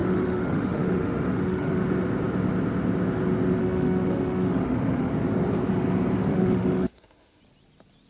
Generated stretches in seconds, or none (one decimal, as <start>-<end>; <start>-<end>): 0.0-1.8; 3.6-5.1; 6.3-7.4